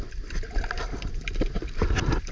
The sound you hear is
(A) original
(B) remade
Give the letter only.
A